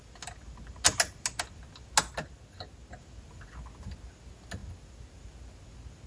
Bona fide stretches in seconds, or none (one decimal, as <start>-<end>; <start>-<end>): 0.0-6.1